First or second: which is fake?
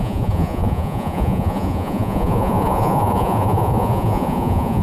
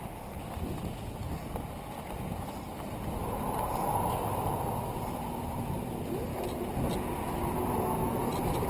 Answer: first